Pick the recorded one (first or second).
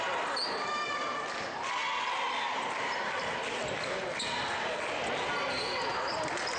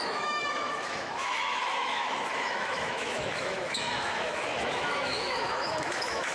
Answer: first